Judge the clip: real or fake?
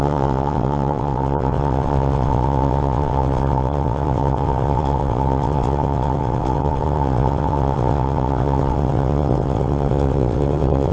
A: fake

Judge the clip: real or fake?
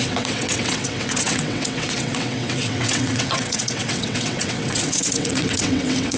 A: fake